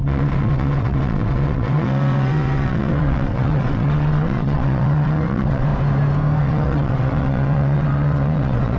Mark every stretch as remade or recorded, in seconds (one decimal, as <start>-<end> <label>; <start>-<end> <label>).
0.0-5.7 remade; 5.7-6.4 recorded; 6.4-8.8 remade